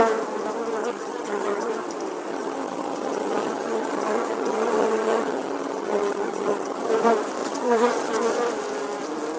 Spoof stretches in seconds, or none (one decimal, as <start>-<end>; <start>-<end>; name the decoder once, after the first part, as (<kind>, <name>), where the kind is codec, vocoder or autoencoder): 0.8-1.7 (vocoder, HiFi-GAN); 2.3-6.9; 7.4-8.1